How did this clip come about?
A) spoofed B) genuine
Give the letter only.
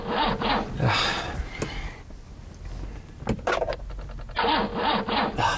B